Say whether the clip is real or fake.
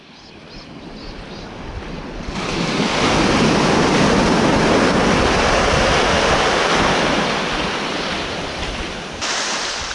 real